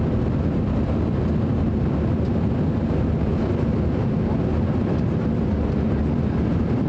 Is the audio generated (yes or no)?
no